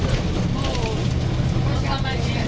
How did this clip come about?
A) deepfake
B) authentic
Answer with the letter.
B